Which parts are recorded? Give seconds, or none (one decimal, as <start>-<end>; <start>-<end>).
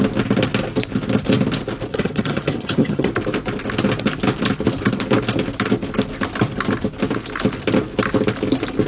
0.0-1.9; 3.1-8.9